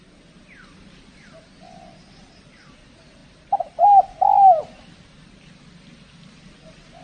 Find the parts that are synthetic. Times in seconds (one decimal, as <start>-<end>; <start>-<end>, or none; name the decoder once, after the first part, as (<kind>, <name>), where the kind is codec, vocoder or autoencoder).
none